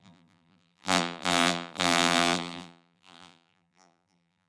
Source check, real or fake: fake